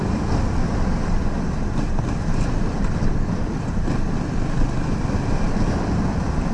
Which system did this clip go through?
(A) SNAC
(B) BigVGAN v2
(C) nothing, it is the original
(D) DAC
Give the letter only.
C